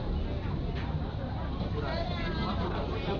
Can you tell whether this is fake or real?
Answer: real